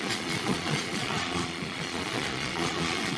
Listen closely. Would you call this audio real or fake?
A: fake